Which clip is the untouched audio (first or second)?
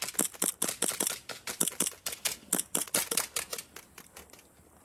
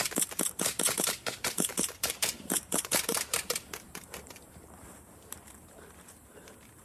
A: first